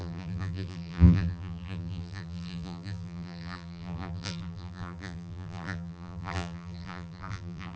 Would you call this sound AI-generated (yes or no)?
yes